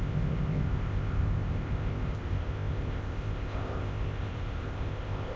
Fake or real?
fake